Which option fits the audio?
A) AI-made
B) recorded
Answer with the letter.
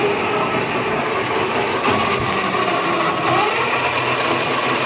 B